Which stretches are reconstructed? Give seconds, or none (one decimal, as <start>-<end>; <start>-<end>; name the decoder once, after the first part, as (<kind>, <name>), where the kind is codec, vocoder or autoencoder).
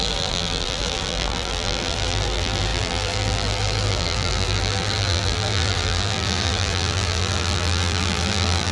0.0-8.7 (vocoder, BigVGAN v2)